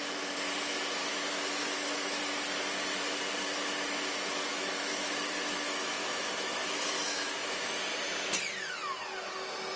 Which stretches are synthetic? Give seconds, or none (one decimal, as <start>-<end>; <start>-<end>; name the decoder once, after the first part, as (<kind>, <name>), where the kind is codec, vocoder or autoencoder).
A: 1.0-2.2 (autoencoder, DAC-VAE); 4.5-7.9